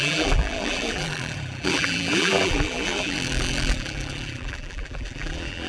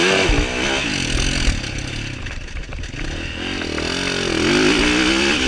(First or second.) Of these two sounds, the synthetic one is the first